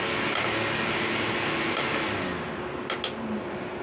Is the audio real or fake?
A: real